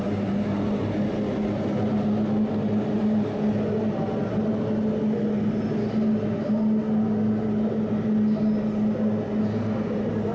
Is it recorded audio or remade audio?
recorded